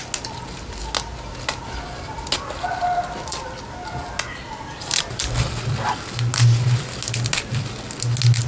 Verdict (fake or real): real